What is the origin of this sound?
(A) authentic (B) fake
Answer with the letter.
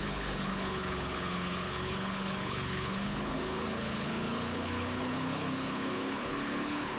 B